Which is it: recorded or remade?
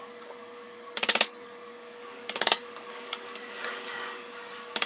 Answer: remade